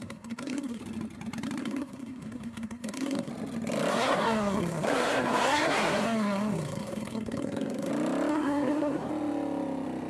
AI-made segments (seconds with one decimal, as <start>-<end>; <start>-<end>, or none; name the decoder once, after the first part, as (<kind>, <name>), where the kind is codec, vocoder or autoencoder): 0.0-0.8 (codec, SNAC); 1.6-3.3; 3.9-7.9; 8.3-9.1